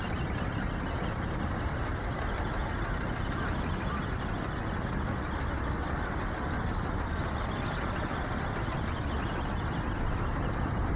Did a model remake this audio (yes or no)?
no